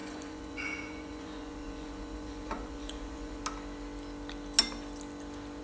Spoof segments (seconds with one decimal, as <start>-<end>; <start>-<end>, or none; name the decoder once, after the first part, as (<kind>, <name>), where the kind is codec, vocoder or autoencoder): 0.0-3.4 (vocoder, Vocos)